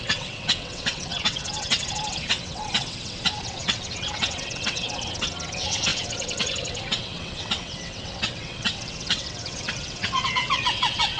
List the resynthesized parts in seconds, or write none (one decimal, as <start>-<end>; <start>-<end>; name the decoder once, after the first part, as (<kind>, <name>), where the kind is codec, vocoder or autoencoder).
0.0-11.2 (vocoder, WaveNeXt)